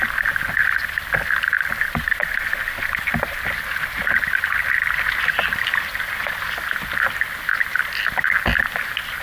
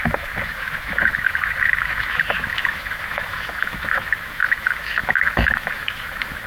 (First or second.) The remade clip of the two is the second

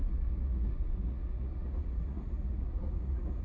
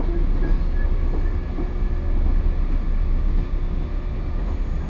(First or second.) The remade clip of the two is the first